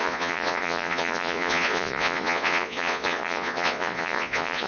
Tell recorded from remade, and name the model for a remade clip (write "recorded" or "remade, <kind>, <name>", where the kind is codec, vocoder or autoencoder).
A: remade, vocoder, Vocos